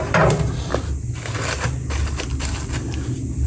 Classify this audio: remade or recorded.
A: recorded